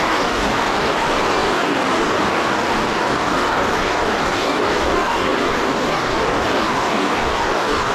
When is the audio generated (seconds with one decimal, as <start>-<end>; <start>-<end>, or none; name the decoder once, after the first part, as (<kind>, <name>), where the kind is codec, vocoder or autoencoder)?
0.0-7.9 (codec, DAC)